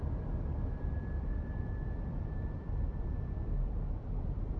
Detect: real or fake fake